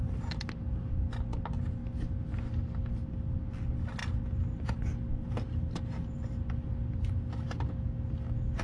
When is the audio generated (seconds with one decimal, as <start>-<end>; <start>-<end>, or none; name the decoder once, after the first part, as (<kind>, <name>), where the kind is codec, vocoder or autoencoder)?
none